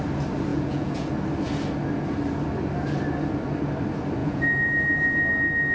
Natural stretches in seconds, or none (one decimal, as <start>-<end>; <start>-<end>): 0.0-0.5; 1.1-4.2; 5.3-5.7

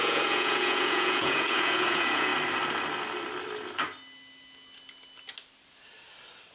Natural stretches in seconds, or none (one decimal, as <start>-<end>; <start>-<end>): 2.3-6.5